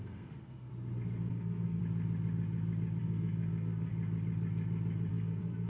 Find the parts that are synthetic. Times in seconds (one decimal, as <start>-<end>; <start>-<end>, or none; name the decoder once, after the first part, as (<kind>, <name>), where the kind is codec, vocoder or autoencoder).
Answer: 0.0-0.7 (codec, SNAC); 1.3-1.8; 3.0-3.9; 5.1-5.7